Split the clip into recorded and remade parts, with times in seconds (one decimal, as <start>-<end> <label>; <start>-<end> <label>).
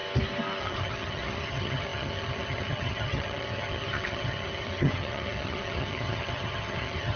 0.0-0.6 recorded; 0.6-7.2 remade